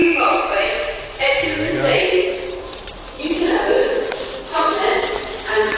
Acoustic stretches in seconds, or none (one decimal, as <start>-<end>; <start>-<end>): 0.7-5.8